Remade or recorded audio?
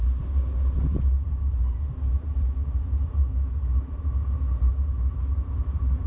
remade